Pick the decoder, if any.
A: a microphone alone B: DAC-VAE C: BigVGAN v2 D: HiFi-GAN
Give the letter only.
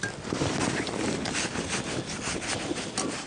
A